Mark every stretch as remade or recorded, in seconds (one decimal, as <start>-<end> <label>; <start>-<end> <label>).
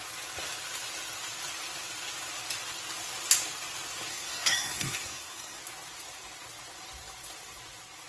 0.0-4.1 recorded; 4.1-5.6 remade; 5.6-8.1 recorded